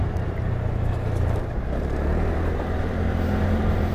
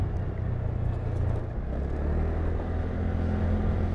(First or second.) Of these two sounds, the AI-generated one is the first